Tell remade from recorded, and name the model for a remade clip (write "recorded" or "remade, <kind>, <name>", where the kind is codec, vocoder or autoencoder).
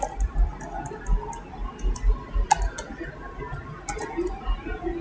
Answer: recorded